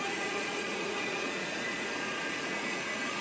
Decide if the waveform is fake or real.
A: fake